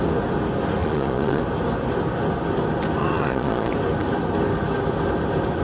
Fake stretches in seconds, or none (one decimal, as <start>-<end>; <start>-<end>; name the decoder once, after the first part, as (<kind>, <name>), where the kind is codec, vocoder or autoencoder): 0.8-1.4 (vocoder, Vocos); 3.0-3.7